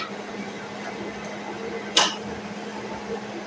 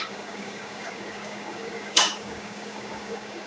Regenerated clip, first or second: second